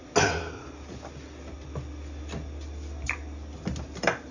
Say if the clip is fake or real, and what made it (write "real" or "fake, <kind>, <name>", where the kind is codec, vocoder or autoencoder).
real